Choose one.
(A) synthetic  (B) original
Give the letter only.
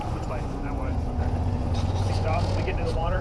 A